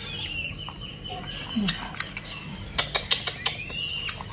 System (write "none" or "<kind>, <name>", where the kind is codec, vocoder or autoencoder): none